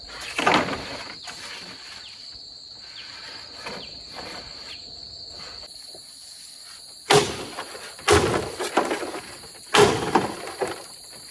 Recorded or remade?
recorded